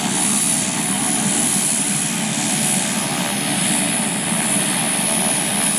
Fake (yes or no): yes